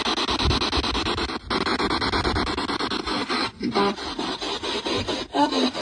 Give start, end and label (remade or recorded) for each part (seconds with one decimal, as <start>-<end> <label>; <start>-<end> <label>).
0.0-5.8 recorded